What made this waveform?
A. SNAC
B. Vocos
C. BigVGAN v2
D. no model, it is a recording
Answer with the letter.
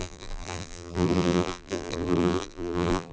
C